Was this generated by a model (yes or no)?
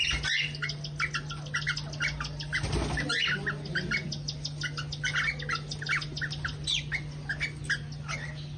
no